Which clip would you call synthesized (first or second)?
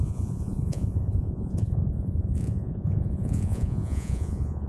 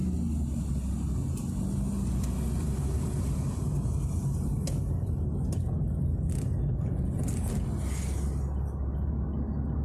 first